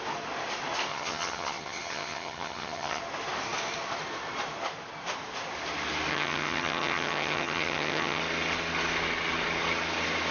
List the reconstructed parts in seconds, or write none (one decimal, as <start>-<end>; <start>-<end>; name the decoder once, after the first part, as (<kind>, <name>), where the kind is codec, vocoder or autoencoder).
0.9-3.0 (vocoder, HiFi-GAN); 6.1-8.2